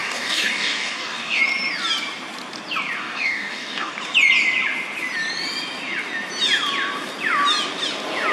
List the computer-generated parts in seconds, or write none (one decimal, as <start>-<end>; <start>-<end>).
0.0-1.4; 3.0-3.9